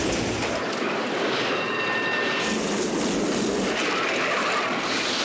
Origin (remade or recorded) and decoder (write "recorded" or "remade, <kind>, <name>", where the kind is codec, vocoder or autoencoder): recorded